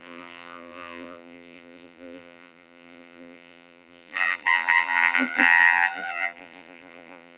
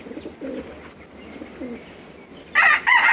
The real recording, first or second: second